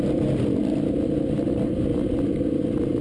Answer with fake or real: real